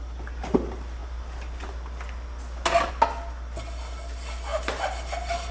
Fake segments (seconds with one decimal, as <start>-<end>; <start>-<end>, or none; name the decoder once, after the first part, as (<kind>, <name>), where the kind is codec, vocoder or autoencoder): none